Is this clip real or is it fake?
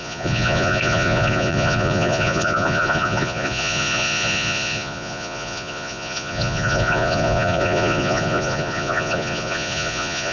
fake